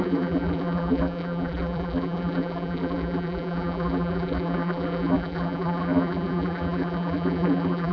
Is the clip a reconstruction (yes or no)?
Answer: yes